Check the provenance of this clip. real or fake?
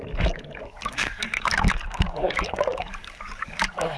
fake